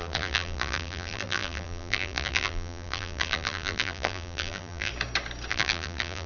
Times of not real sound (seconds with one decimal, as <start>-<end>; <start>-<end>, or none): 0.0-4.9; 5.5-6.3

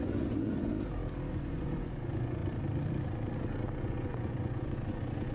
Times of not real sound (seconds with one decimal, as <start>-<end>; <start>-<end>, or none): 0.0-0.7; 1.3-2.4; 3.8-5.3

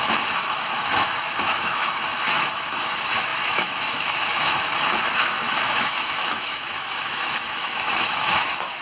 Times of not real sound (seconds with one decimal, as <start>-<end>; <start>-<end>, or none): 0.0-8.8

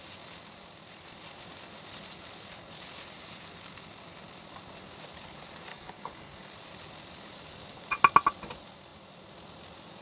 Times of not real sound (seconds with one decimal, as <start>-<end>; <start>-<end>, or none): 5.7-6.5

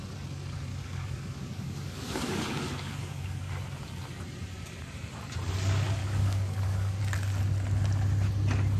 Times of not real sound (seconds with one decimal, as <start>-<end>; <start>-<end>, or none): 0.7-3.5; 6.0-7.0

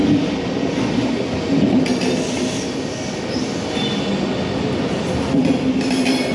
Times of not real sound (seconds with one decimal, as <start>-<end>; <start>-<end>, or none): none